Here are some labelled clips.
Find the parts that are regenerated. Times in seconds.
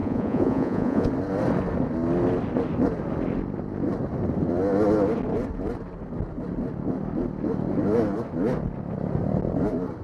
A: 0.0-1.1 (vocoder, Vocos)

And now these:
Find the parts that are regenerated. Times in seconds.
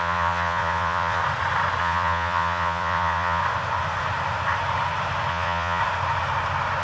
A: 0.0-1.2 (vocoder, Vocos); 1.8-3.4; 5.3-5.8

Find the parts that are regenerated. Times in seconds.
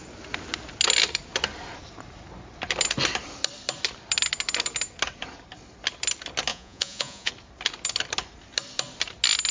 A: 6.5-7.3 (vocoder, Vocos)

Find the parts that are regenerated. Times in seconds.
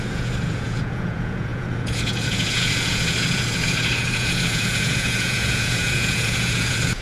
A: 0.0-7.0 (vocoder, Vocos)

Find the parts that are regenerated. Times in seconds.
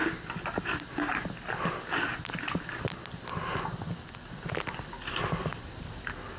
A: none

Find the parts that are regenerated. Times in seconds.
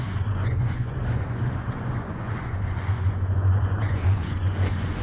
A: 0.0-5.0 (vocoder, Vocos)